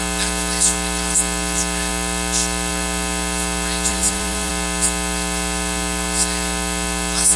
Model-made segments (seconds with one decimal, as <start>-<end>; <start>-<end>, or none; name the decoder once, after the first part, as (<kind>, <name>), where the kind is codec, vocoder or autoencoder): 3.9-4.5 (vocoder, Vocos)